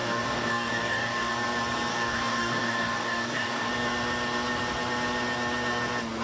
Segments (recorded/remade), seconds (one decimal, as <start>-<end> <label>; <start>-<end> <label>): 0.0-1.3 remade; 1.3-1.9 recorded; 1.9-3.7 remade; 3.7-6.2 recorded